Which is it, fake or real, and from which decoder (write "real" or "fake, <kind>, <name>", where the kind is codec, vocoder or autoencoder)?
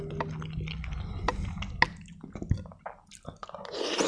real